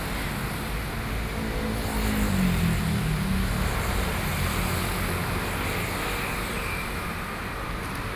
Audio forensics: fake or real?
real